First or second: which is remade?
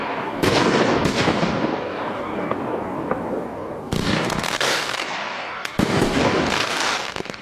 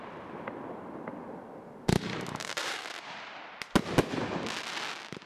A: first